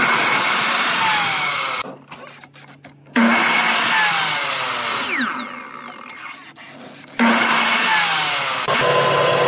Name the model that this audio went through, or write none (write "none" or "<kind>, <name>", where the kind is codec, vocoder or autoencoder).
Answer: none